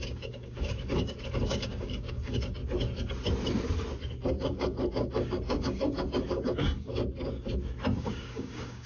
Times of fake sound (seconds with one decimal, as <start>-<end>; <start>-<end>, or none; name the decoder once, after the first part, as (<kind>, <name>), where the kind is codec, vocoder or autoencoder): 0.0-2.6 (codec, DAC); 4.3-7.0; 8.0-8.9